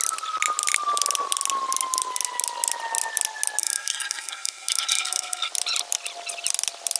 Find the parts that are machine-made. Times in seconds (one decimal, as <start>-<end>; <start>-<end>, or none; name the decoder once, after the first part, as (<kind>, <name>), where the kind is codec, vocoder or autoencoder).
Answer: 3.6-5.5 (codec, SNAC)